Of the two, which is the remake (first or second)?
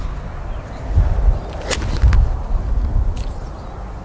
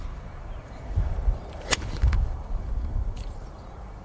second